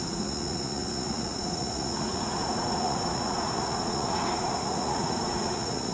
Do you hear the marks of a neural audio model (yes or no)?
yes